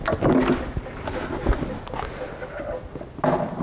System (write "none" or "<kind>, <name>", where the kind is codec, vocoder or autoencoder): none